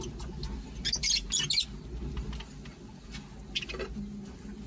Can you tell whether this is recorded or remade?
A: recorded